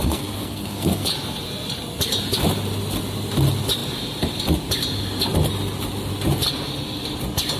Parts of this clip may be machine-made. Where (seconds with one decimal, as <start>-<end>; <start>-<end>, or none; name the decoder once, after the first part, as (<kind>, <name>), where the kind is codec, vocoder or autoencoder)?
0.0-1.1 (codec, SNAC)